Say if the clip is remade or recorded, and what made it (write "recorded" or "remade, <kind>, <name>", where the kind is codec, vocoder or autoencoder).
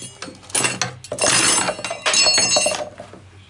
recorded